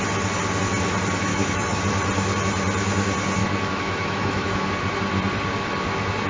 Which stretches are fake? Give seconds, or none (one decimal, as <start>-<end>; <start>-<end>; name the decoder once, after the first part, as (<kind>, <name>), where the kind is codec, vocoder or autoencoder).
1.3-1.8 (autoencoder, DAC-VAE); 3.4-4.7

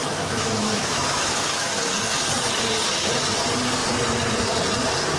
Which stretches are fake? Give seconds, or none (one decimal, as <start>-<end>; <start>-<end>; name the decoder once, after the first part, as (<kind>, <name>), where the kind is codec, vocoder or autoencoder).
0.0-1.7 (autoencoder, DAC-VAE)

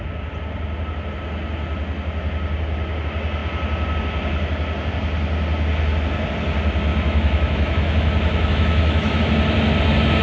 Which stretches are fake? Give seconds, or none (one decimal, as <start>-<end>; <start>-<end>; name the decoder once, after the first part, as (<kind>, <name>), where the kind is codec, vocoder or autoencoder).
6.9-9.2 (autoencoder, DAC-VAE)

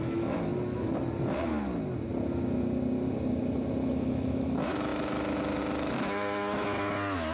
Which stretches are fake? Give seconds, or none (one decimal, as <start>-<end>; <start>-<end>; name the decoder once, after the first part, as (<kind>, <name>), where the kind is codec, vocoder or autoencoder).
0.0-0.5 (autoencoder, DAC-VAE); 3.9-7.3